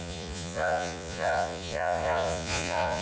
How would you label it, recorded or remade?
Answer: remade